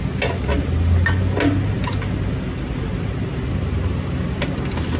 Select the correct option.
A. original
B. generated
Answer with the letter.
A